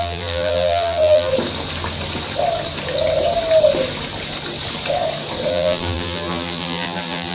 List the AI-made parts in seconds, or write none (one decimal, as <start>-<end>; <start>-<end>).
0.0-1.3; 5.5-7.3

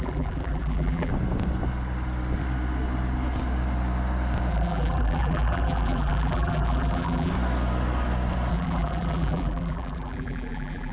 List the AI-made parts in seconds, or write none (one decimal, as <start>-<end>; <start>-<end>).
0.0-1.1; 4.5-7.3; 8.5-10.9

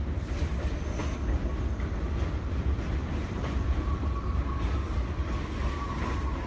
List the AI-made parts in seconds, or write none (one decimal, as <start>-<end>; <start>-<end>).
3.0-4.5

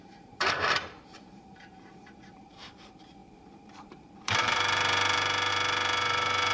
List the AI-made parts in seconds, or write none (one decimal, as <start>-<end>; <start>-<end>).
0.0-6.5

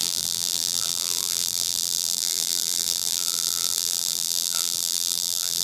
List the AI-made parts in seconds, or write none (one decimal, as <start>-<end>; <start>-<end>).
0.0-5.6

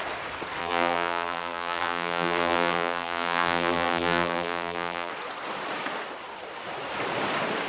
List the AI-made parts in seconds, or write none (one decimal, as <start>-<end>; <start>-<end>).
0.6-5.1